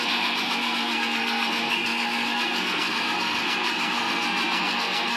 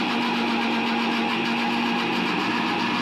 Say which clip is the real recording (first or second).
second